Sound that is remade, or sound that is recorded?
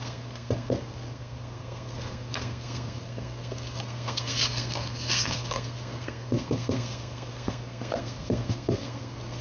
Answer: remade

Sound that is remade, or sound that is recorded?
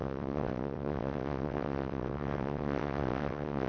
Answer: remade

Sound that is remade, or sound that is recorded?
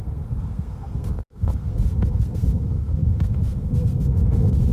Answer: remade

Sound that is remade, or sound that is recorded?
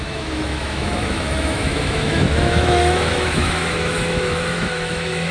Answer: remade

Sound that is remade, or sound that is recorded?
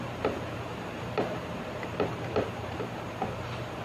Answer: remade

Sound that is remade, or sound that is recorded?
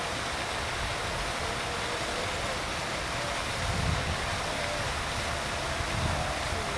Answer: recorded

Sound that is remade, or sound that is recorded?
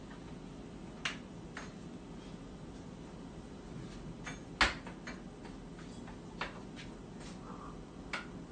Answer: recorded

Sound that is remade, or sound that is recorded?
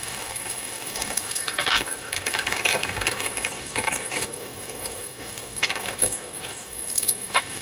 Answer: remade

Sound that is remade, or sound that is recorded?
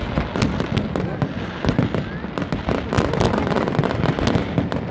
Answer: recorded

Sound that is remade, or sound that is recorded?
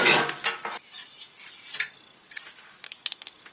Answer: recorded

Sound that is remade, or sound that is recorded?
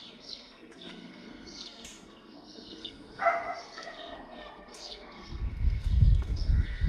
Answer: remade